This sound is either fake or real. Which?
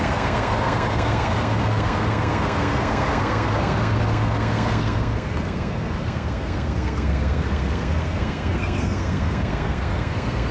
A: fake